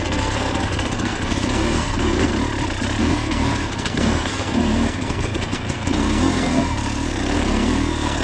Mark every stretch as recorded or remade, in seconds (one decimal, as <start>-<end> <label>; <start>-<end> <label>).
0.0-2.3 remade; 2.3-3.0 recorded; 3.0-8.2 remade